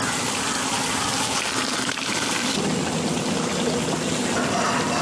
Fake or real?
real